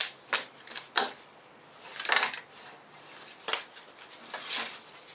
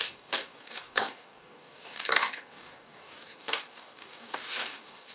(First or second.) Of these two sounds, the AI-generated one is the second